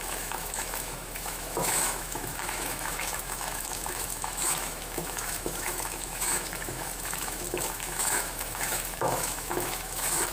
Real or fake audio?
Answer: fake